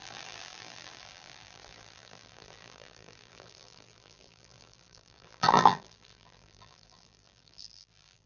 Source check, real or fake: fake